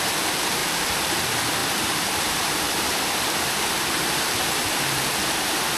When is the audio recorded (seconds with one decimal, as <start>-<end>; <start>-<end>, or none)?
none